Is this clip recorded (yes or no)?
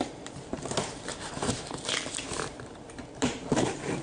no